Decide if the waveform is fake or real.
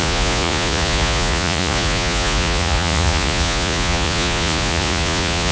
fake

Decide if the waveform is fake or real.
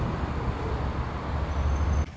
real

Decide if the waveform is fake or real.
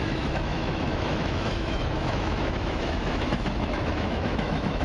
fake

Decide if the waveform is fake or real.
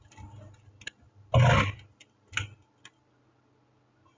real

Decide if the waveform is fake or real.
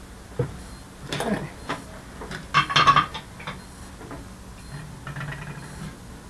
real